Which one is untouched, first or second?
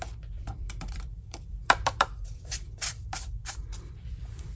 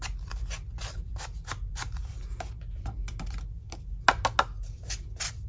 second